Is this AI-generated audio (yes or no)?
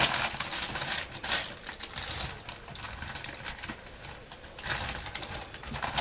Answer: no